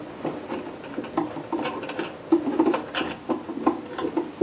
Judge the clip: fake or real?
real